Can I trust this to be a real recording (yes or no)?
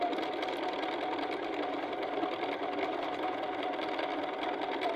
no